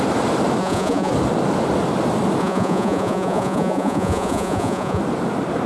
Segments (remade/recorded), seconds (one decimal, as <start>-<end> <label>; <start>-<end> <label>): 0.0-0.6 recorded; 0.6-1.1 remade; 1.1-2.4 recorded; 2.4-5.0 remade; 5.0-5.7 recorded